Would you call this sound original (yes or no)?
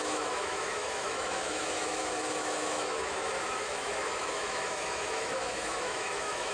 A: no